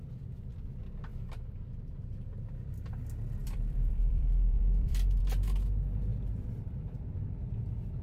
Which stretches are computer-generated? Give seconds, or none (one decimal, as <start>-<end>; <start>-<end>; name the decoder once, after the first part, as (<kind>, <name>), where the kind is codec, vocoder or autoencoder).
1.1-1.8 (vocoder, BigVGAN v2); 3.4-5.2